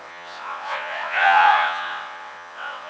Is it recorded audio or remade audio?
remade